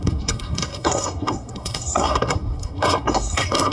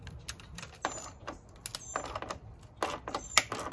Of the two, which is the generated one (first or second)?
first